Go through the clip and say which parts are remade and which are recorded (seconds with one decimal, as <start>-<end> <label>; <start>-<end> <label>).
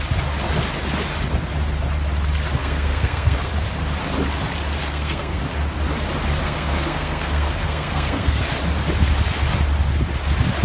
0.0-2.6 recorded; 2.6-3.5 remade; 3.5-4.8 recorded; 4.8-5.4 remade; 5.4-6.4 recorded; 6.4-8.4 remade; 8.4-10.6 recorded